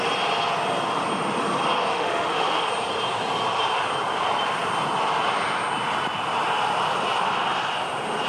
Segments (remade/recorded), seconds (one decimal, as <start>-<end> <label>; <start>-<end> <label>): 0.0-1.9 recorded; 1.9-2.7 remade; 2.7-8.3 recorded